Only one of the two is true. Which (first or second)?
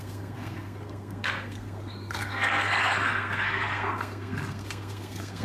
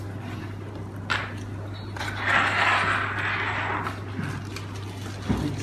second